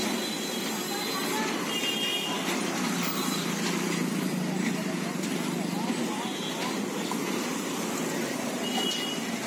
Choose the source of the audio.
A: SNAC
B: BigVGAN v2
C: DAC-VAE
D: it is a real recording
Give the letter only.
D